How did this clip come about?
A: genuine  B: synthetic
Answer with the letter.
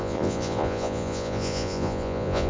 B